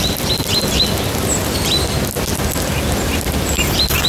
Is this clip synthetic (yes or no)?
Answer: no